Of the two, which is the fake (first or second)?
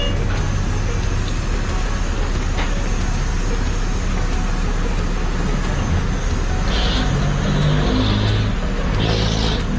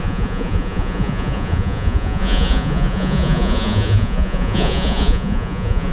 second